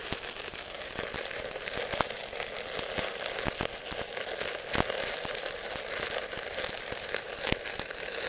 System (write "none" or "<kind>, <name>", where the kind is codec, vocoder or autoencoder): none